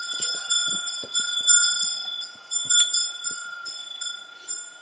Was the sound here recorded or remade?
remade